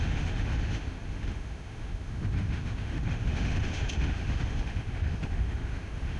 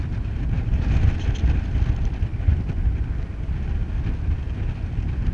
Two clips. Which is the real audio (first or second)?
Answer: second